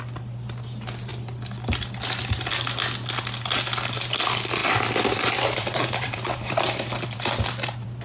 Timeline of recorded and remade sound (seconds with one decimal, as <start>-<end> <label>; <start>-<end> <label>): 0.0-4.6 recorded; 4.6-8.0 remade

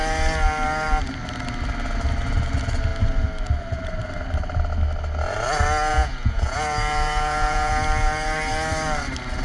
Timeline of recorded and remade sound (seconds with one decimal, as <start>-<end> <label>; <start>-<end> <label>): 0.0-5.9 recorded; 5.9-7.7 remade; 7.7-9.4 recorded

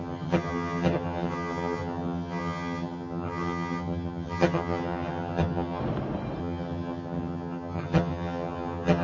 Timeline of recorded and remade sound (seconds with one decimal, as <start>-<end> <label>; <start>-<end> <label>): 0.0-5.8 remade; 5.8-6.4 recorded; 6.4-9.0 remade